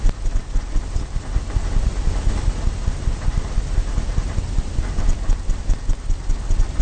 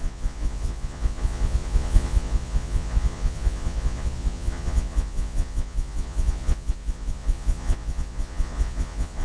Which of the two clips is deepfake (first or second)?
second